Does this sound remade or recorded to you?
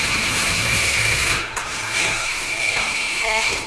remade